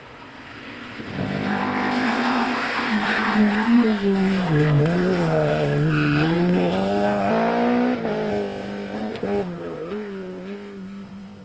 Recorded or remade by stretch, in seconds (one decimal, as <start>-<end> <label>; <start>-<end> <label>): 0.0-7.3 remade; 7.3-8.3 recorded; 8.3-11.4 remade